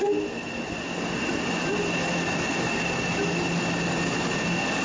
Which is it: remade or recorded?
recorded